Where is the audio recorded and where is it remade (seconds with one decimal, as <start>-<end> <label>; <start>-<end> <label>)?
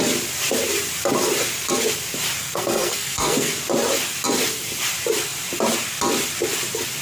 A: 0.0-2.4 recorded; 2.4-3.5 remade; 3.5-7.0 recorded